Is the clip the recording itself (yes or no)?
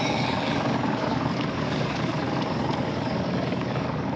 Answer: no